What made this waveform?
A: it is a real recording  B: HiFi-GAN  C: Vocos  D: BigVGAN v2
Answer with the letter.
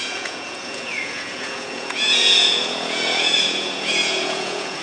C